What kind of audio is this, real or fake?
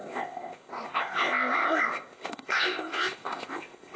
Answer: fake